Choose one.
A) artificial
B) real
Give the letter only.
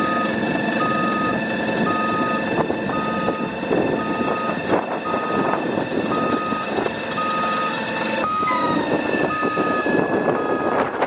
B